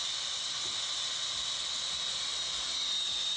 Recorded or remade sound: recorded